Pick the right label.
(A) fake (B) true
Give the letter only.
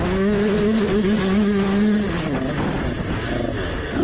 B